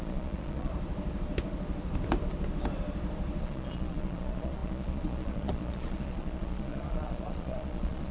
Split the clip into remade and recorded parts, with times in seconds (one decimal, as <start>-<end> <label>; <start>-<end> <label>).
0.0-0.7 remade; 0.7-3.4 recorded; 3.4-8.1 remade